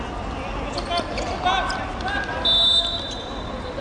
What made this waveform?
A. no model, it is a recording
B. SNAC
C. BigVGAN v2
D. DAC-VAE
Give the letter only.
A